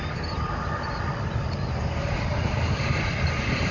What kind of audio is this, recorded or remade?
recorded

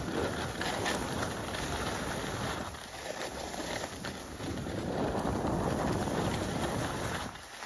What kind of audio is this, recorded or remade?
recorded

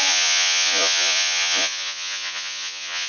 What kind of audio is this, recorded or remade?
remade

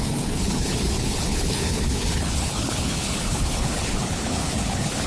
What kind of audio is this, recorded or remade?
remade